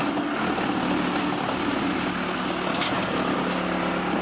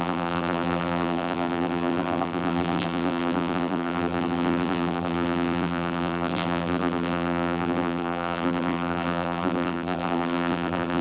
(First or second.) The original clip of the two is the first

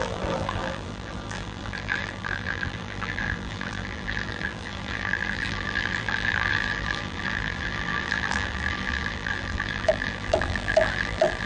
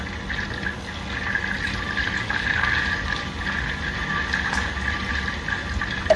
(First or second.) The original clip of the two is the second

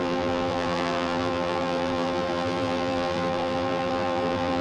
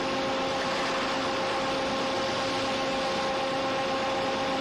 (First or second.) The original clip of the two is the second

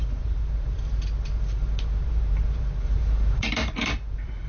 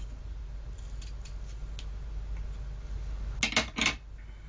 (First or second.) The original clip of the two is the second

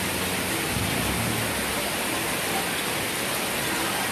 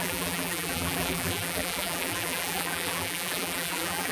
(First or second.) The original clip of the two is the first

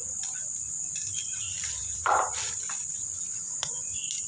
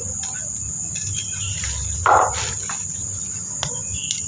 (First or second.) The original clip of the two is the second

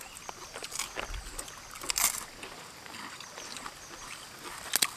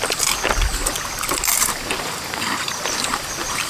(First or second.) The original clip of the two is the first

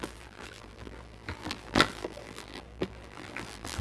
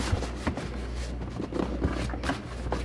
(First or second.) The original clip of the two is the second